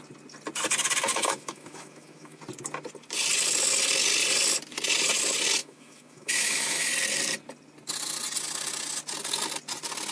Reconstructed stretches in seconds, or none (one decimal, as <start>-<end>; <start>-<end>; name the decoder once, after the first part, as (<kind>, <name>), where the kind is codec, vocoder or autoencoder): 1.1-2.4 (autoencoder, DAC-VAE); 5.6-6.9